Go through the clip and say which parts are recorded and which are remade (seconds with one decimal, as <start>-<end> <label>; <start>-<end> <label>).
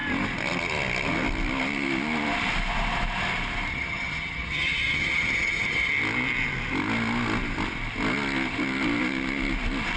0.0-3.7 recorded; 3.7-5.9 remade; 5.9-10.0 recorded